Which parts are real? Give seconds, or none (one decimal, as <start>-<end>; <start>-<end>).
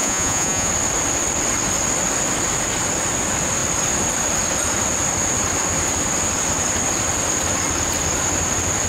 0.7-8.9